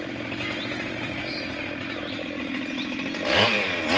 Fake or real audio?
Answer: fake